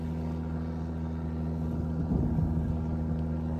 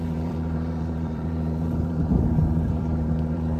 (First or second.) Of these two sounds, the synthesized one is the second